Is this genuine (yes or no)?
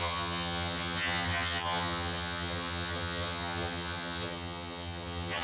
no